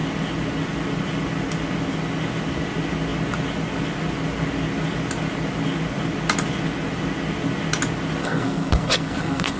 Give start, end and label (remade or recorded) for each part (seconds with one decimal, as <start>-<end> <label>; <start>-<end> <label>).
0.0-8.2 recorded; 8.2-9.6 remade